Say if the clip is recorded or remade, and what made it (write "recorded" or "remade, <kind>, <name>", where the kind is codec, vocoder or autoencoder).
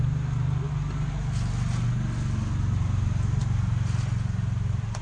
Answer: recorded